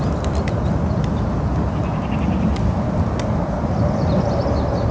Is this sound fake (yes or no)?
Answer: no